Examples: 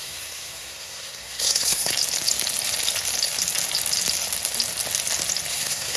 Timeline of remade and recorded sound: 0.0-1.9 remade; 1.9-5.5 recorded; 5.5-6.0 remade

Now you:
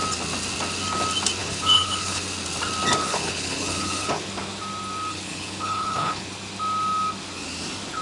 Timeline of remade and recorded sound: 0.0-1.4 recorded; 1.4-2.2 remade; 2.2-3.0 recorded; 3.0-4.3 remade; 4.3-5.1 recorded; 5.1-6.3 remade; 6.3-8.0 recorded